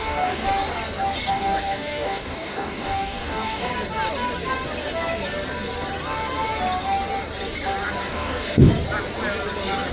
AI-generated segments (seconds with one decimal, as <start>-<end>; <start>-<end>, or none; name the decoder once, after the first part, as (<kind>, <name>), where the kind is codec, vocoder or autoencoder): 0.0-0.4 (codec, DAC); 1.3-3.7; 8.0-8.7